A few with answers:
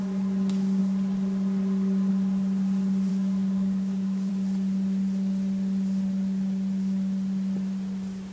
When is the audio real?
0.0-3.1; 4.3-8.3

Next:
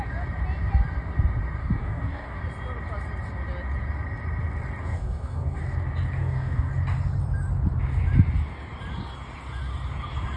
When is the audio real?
0.0-1.6; 2.4-4.8; 5.6-6.2; 6.7-10.4

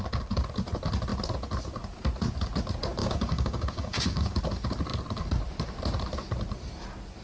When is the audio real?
0.0-3.0; 4.4-7.2

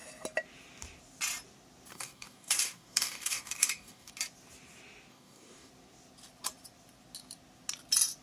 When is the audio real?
0.0-1.9; 4.1-5.1; 5.7-8.2

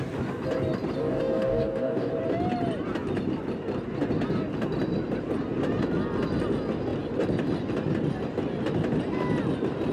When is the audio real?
0.0-1.0; 2.1-9.9

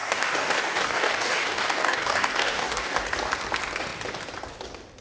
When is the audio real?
3.0-5.0